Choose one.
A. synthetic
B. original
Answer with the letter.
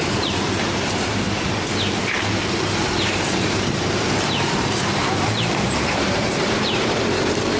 A